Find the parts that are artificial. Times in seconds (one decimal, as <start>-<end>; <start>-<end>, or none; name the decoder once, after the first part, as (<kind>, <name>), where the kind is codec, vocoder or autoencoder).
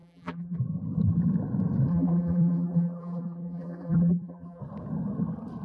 0.0-0.6 (vocoder, BigVGAN v2); 1.9-4.6